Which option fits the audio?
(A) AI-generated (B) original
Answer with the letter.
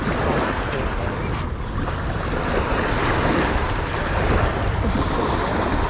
B